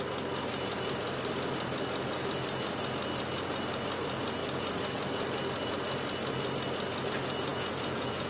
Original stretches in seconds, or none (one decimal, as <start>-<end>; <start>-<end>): 0.0-7.5